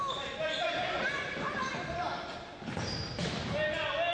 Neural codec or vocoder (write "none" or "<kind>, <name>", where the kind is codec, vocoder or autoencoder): none